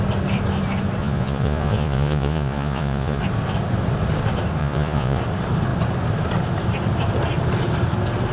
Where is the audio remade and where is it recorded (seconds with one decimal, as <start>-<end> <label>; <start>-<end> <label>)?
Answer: 0.0-1.0 recorded; 1.0-3.2 remade; 3.2-4.6 recorded; 4.6-5.2 remade; 5.2-8.3 recorded